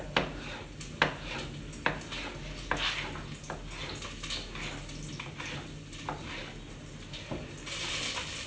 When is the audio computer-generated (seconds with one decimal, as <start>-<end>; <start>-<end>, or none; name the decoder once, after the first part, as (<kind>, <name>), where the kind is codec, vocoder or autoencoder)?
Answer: none